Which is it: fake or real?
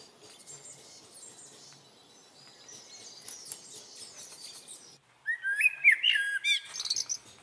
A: real